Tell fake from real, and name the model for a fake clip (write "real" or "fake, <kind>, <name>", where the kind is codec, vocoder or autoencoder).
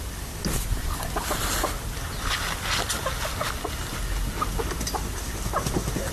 real